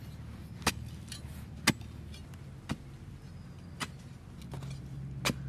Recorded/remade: recorded